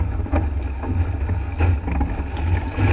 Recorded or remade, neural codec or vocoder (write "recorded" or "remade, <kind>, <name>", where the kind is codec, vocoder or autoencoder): recorded